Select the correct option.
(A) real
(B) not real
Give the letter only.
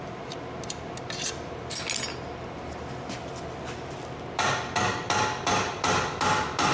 A